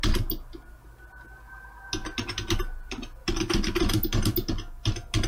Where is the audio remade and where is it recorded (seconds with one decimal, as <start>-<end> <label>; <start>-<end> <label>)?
0.0-5.3 recorded